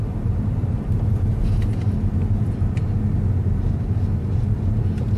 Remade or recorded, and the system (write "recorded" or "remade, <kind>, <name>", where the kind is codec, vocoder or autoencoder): recorded